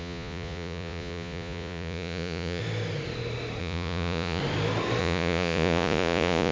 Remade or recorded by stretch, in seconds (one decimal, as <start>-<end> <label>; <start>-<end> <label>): 0.0-2.6 remade; 2.6-3.6 recorded; 3.6-4.4 remade; 4.4-5.0 recorded; 5.0-6.5 remade